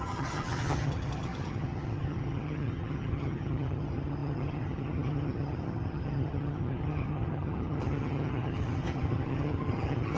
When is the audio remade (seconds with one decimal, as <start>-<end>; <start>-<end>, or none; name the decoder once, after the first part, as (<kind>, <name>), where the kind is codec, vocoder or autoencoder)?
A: 0.0-10.2 (vocoder, HiFi-GAN)

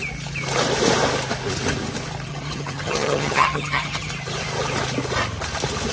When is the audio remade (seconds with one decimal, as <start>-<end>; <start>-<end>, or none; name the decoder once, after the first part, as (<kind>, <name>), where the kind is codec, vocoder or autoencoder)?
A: 2.3-4.1 (vocoder, HiFi-GAN)

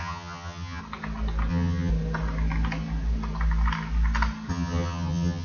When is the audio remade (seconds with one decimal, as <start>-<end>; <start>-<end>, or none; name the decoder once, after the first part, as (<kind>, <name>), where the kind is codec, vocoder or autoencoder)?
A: 0.0-0.8 (vocoder, HiFi-GAN); 1.5-1.9; 4.5-5.4

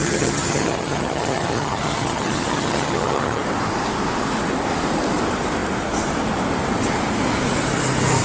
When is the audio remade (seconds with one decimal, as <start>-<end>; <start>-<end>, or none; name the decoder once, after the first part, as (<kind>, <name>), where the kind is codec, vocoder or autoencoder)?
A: 0.0-3.4 (vocoder, HiFi-GAN)

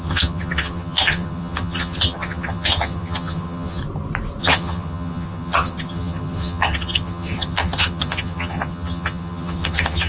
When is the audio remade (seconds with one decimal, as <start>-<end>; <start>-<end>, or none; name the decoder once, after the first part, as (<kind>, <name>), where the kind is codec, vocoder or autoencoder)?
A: 0.0-3.8 (vocoder, HiFi-GAN); 4.4-10.1